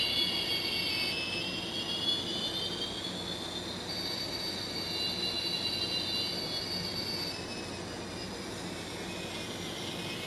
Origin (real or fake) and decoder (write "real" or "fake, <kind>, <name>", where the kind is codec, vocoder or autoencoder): real